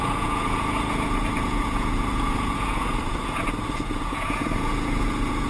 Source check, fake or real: fake